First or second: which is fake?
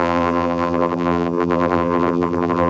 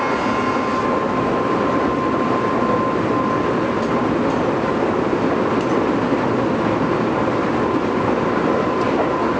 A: first